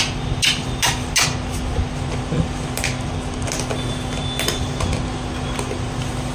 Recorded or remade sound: recorded